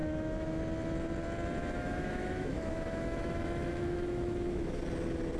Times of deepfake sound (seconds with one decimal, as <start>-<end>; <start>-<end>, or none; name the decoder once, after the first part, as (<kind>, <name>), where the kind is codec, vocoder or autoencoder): 0.0-0.6 (autoencoder, DAC-VAE); 1.6-4.8